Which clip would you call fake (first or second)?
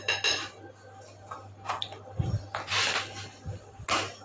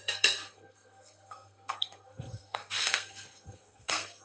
second